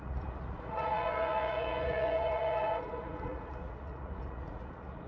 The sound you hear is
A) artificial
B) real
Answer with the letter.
A